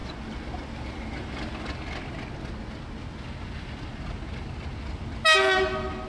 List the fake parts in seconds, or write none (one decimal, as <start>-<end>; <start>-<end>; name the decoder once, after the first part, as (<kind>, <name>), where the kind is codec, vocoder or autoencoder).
none